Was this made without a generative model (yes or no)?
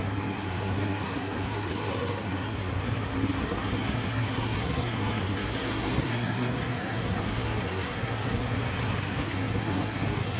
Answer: no